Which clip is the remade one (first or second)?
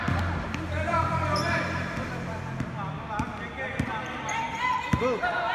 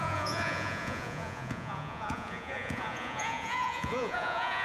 second